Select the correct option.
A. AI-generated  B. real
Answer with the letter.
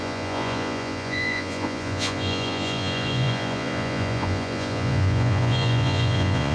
A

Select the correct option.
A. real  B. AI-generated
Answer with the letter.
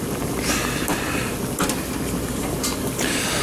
A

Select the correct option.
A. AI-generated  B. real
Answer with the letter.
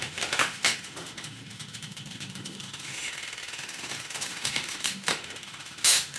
A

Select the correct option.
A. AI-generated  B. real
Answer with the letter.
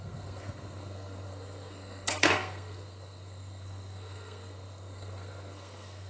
A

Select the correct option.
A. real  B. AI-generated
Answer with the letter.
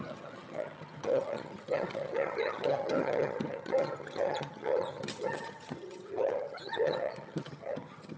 B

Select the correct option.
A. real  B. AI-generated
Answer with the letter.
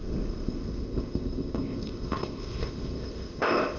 B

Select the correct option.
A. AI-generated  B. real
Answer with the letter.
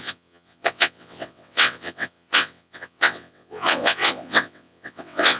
A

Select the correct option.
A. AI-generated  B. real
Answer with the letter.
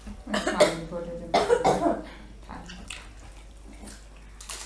B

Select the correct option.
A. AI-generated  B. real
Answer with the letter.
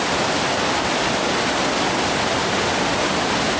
B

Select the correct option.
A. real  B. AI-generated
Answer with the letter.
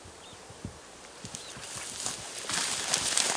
A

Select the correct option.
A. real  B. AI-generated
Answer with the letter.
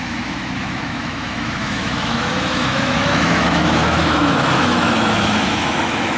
B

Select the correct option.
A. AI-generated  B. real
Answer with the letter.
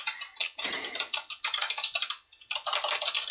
B